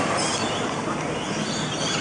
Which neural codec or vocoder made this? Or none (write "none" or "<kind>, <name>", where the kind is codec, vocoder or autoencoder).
none